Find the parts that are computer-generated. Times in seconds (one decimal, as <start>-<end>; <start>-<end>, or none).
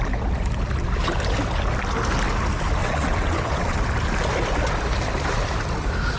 2.8-3.8